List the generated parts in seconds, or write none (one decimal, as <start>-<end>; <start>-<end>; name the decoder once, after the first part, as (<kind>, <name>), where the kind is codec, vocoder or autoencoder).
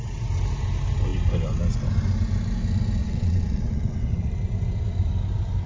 3.0-4.3 (vocoder, WaveNeXt)